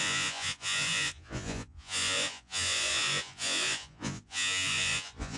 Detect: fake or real fake